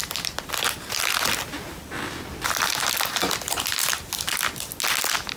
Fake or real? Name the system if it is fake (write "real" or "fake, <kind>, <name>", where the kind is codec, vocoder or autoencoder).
real